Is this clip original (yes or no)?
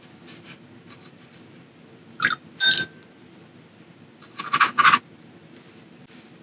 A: yes